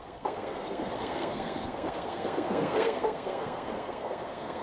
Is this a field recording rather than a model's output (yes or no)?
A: no